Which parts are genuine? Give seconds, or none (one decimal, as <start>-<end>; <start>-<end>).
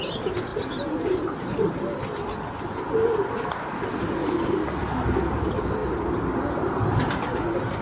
0.0-4.2; 4.8-7.8